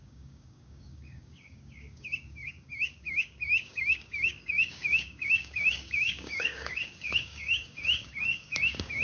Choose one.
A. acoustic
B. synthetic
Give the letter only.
B